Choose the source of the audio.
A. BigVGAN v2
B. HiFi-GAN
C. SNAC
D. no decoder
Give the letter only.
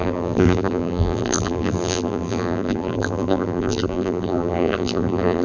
A